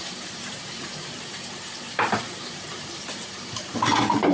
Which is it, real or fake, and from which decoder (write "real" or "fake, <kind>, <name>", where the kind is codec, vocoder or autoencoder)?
fake, vocoder, BigVGAN v2